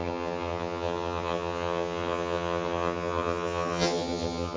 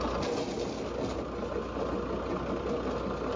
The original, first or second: second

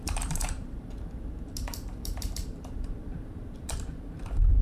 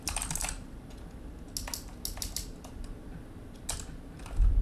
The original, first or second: second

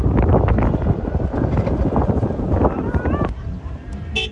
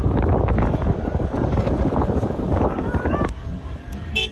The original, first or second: first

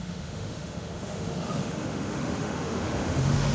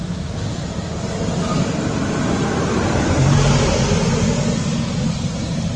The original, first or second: second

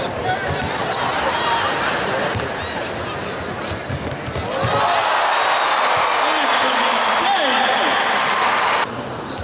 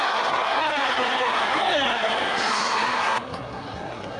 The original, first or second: first